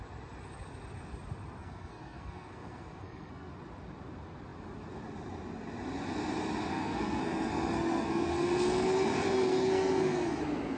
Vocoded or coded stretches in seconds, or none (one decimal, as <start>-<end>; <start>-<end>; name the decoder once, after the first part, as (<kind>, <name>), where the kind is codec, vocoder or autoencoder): 1.6-3.5 (codec, SNAC); 6.7-10.4